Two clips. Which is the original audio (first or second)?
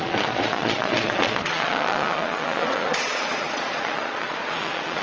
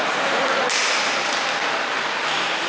second